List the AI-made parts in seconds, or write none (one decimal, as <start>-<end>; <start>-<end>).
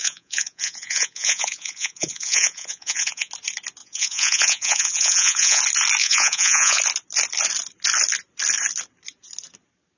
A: 0.0-3.3; 3.8-5.6; 6.0-6.8